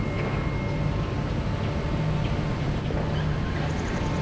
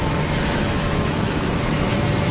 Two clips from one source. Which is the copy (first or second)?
second